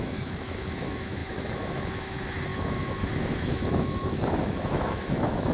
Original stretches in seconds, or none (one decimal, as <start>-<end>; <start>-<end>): none